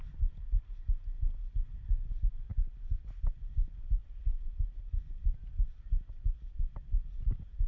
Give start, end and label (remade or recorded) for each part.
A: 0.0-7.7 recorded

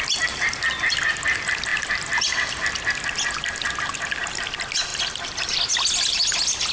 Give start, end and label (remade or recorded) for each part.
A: 0.0-6.7 recorded

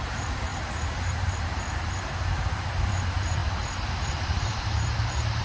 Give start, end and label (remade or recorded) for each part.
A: 0.0-0.5 remade; 0.5-1.1 recorded; 1.1-3.4 remade; 3.4-4.1 recorded; 4.1-5.4 remade

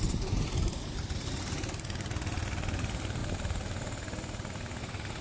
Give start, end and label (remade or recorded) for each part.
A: 0.0-3.2 recorded; 3.2-4.8 remade; 4.8-5.2 recorded

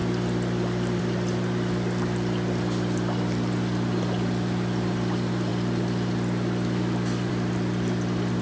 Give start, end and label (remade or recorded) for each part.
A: 0.0-8.4 recorded

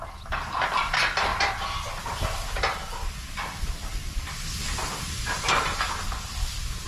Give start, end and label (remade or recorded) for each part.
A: 0.0-6.9 recorded